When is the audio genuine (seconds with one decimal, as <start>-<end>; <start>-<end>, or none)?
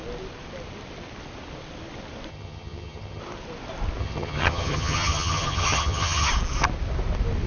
0.0-2.3; 3.2-4.0; 6.3-7.5